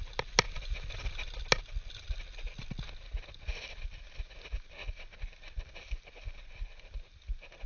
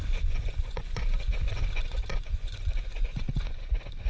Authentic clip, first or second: first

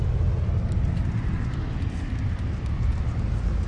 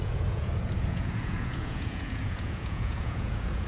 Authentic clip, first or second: first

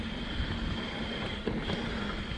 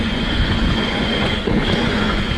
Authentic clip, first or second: first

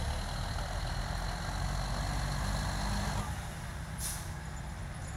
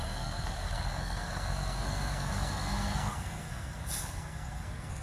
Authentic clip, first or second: first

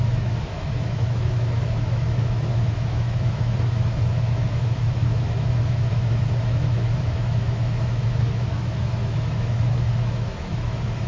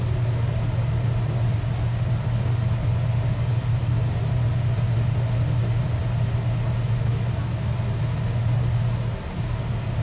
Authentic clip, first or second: second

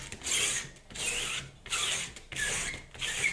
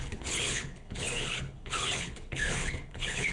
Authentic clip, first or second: first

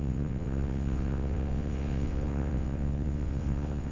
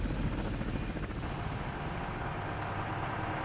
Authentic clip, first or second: second